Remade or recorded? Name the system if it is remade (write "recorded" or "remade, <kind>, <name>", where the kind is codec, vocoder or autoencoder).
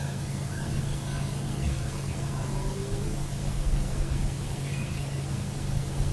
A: remade, codec, SNAC